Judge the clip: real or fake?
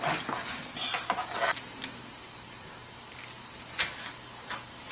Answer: real